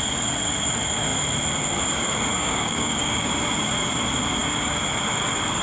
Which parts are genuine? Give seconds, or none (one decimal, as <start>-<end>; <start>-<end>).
0.0-2.3; 3.3-5.6